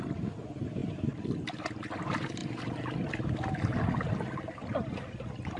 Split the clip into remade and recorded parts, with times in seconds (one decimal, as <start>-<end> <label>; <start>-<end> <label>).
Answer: 0.0-5.6 recorded